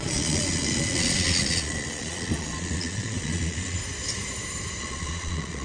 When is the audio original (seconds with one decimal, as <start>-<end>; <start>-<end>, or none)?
3.8-4.8